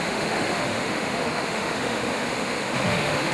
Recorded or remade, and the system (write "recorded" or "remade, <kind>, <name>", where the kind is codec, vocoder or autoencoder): remade, autoencoder, DAC-VAE